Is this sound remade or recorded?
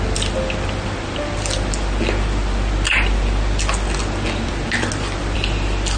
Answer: recorded